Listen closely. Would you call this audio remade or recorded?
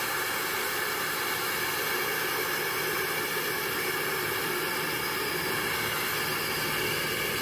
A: recorded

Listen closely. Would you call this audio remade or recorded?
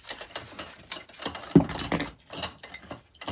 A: recorded